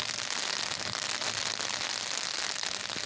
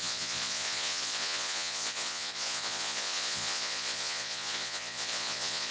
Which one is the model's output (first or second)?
second